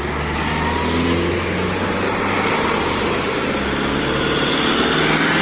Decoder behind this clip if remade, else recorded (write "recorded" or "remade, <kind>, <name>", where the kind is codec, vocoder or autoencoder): recorded